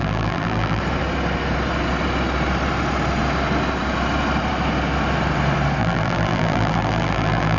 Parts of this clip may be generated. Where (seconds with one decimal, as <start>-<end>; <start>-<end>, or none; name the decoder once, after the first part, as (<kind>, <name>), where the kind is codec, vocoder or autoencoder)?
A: 0.0-0.8 (vocoder, BigVGAN v2); 5.8-7.6